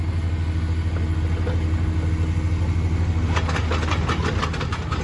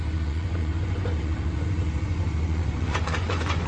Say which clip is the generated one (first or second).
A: second